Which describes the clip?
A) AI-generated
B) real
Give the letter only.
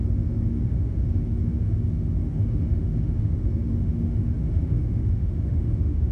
A